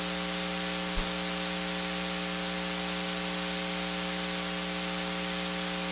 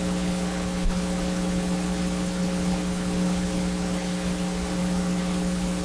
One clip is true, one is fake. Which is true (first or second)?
first